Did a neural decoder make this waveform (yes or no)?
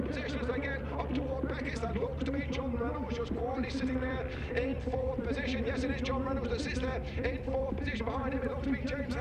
yes